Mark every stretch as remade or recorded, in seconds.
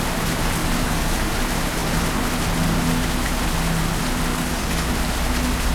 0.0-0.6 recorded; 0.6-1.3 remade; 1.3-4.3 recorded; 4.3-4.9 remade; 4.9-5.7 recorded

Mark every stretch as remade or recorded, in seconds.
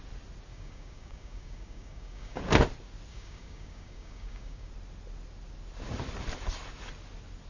0.0-0.5 recorded; 0.5-2.4 remade; 2.4-3.1 recorded; 3.1-4.7 remade; 4.7-7.5 recorded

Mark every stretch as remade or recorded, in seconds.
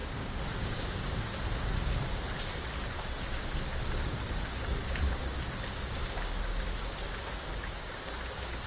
0.0-1.3 remade; 1.3-7.5 recorded; 7.5-8.2 remade; 8.2-8.7 recorded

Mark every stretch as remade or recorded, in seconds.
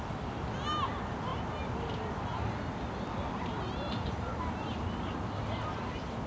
0.0-6.3 recorded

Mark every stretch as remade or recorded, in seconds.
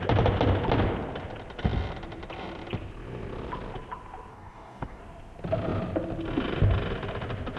0.0-4.3 recorded; 4.3-5.0 remade; 5.0-7.6 recorded